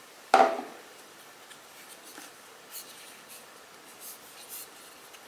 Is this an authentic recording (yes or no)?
yes